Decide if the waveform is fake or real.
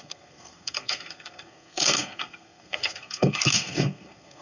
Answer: fake